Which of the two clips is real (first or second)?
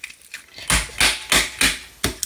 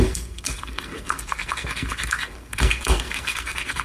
first